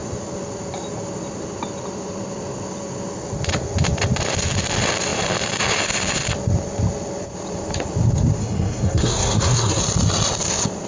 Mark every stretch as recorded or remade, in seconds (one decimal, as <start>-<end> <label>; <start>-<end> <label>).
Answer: 0.0-8.4 recorded; 8.4-9.8 remade; 9.8-10.9 recorded